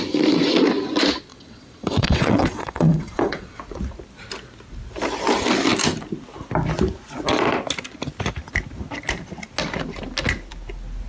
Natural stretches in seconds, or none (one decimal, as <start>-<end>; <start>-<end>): 0.0-1.3; 3.6-11.1